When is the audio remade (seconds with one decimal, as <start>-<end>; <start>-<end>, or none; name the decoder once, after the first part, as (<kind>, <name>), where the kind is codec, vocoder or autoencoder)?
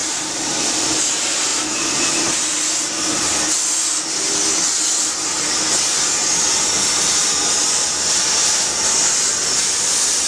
none